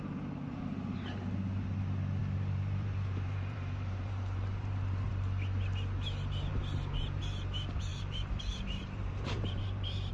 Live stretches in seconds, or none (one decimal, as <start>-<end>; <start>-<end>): 0.0-2.2; 5.1-7.9